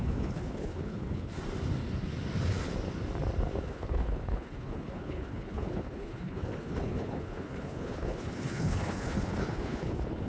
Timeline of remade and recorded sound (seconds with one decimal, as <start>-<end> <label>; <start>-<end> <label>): 0.0-1.3 remade; 1.3-3.6 recorded; 3.6-10.3 remade